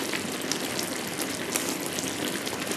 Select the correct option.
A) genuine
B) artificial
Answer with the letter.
A